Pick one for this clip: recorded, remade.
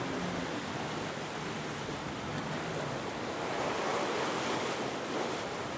recorded